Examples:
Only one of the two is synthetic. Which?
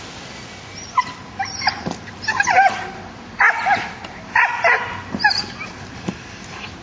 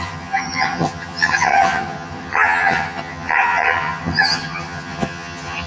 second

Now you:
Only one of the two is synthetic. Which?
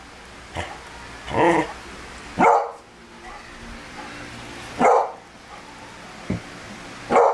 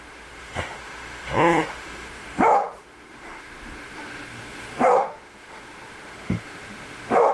second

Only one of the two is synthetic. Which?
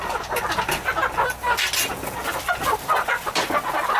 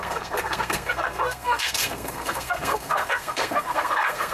second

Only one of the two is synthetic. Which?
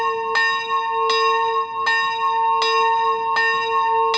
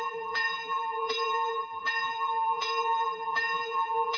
second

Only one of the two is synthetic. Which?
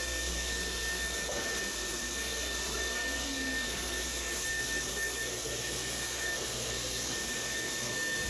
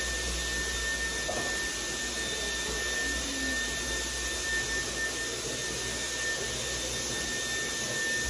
first